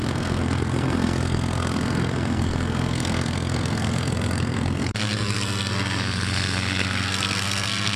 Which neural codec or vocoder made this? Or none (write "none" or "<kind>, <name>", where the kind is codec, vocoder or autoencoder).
codec, SNAC